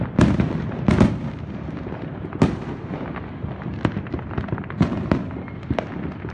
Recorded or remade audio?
recorded